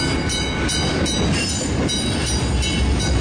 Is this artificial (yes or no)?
no